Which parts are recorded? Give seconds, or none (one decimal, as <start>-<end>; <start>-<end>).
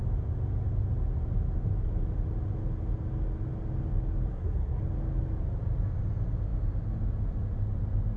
0.0-4.3; 4.8-8.2